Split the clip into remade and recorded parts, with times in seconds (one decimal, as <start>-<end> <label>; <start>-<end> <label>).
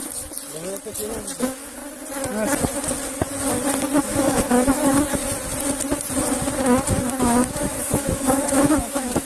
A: 0.0-1.4 recorded; 1.4-1.8 remade; 1.8-4.0 recorded; 4.0-5.2 remade; 5.2-7.0 recorded; 7.0-9.2 remade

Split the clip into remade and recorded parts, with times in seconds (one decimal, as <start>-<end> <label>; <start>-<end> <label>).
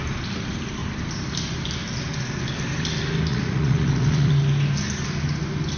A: 0.0-3.3 recorded; 3.3-4.3 remade; 4.3-5.8 recorded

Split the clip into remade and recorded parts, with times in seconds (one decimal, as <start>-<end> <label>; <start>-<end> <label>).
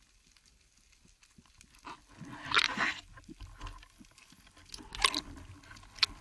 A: 0.0-6.2 recorded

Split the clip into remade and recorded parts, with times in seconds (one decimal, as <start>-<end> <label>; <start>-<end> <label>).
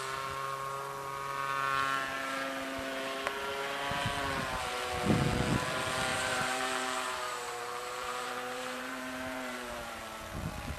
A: 0.0-6.1 recorded; 6.1-10.0 remade; 10.0-10.8 recorded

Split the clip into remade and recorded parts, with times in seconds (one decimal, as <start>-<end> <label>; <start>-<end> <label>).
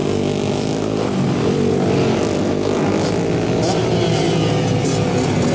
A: 0.0-5.5 recorded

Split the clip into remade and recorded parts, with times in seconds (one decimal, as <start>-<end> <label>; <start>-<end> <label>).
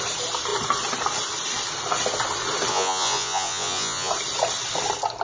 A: 0.0-2.7 recorded; 2.7-4.1 remade; 4.1-5.2 recorded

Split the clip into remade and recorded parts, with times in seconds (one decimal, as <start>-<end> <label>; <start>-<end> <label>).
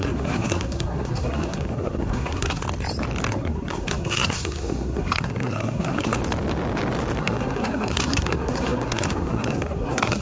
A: 0.0-2.6 remade; 2.6-3.3 recorded; 3.3-6.2 remade; 6.2-7.2 recorded; 7.2-10.2 remade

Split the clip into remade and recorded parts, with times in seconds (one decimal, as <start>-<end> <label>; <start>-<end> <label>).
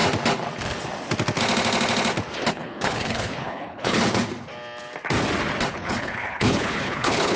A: 0.0-2.5 recorded; 2.5-4.0 remade; 4.0-5.7 recorded; 5.7-7.4 remade